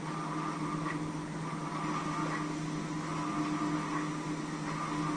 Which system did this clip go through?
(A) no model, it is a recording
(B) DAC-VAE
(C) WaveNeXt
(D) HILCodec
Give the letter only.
A